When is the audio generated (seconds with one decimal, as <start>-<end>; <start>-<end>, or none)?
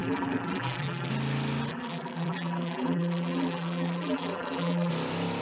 0.0-1.1; 1.7-4.9